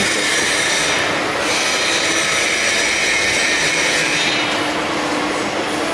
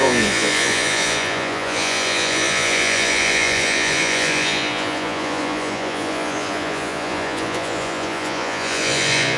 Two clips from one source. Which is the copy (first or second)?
second